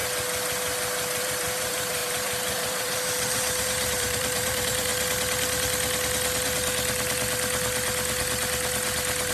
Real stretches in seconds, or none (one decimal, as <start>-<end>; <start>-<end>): 0.0-1.2; 4.9-9.3

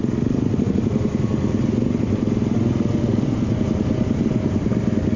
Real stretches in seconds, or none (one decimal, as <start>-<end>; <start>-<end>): 0.0-5.2

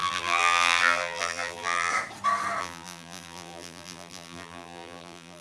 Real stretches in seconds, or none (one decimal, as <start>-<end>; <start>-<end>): 1.9-2.6

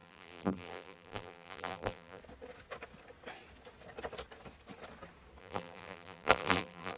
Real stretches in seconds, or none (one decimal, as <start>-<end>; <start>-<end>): 2.2-5.4

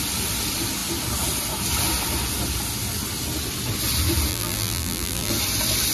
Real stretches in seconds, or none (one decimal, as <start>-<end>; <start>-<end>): 0.0-4.3; 5.3-5.9